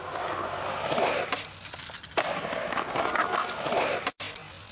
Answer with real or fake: real